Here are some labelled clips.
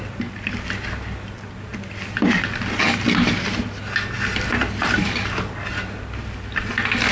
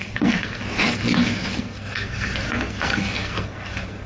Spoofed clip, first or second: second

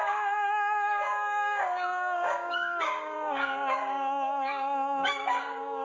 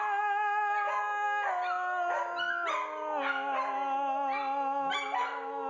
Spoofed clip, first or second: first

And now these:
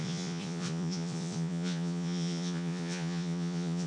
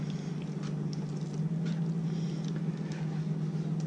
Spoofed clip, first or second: first